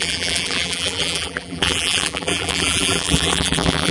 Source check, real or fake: fake